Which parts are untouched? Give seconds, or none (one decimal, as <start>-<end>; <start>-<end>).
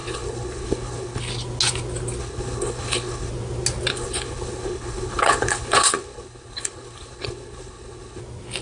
1.2-2.2; 3.3-3.9; 8.2-8.6